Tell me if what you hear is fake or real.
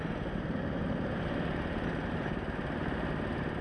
real